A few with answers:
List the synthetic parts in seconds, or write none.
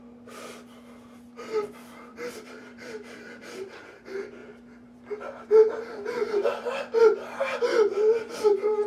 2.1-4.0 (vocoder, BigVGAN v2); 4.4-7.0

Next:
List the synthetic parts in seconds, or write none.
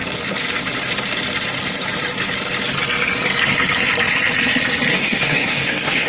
4.9-6.1 (codec, SNAC)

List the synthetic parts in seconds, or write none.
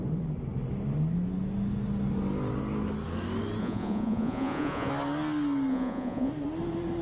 3.6-4.9 (vocoder, Vocos); 5.7-6.3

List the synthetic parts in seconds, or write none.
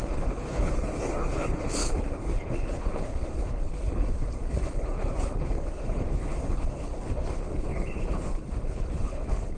0.0-9.6 (codec, HILCodec)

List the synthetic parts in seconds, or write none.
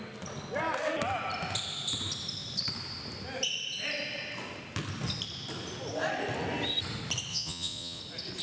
7.3-8.0 (vocoder, Vocos)